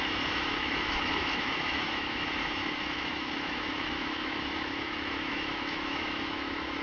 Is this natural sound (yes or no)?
no